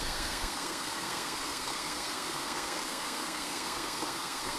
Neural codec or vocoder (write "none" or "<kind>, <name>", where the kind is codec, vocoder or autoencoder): codec, SNAC